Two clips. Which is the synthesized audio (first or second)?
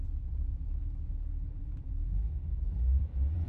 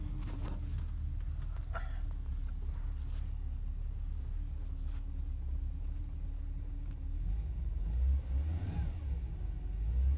first